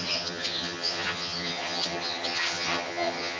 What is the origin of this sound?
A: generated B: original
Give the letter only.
A